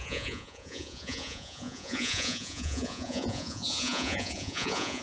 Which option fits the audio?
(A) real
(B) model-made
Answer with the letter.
B